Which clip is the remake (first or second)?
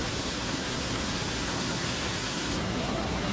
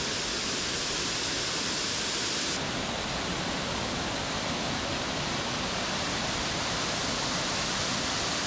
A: first